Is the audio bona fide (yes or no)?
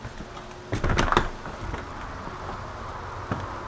yes